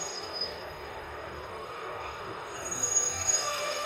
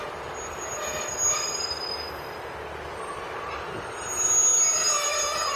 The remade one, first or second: first